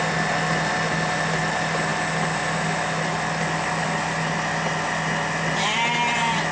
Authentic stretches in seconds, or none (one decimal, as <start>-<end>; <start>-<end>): 0.0-6.5